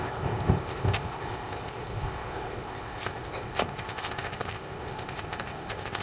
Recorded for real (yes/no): no